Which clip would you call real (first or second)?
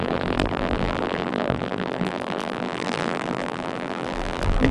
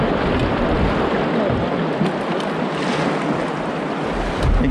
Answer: second